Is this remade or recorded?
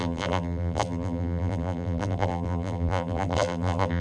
remade